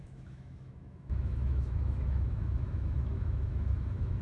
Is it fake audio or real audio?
fake